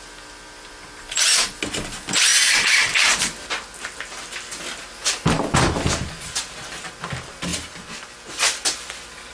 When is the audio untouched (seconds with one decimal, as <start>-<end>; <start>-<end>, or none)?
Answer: 0.0-9.3

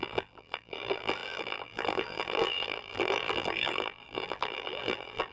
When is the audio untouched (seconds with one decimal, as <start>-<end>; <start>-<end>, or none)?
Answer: none

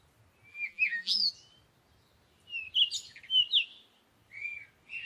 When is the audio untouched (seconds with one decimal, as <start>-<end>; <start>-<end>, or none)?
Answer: 0.0-0.5; 1.3-5.1

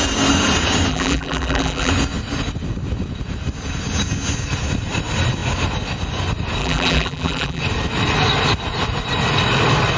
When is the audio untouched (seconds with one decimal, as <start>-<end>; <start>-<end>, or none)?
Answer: 0.0-0.9; 1.9-6.6; 7.6-10.0

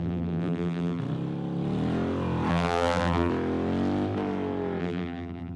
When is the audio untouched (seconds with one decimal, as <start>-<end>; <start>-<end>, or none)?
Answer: 1.0-2.5; 3.3-4.8

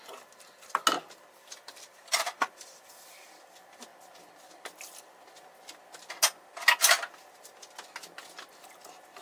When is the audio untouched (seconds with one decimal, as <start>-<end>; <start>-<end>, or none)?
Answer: 0.0-1.4; 2.9-9.2

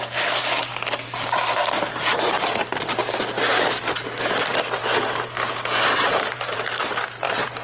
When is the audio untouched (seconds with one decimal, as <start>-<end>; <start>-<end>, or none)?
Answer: 0.7-1.9; 3.0-3.8; 4.8-5.5

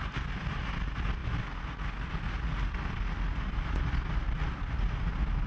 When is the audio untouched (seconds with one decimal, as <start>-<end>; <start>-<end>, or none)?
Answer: 0.0-5.5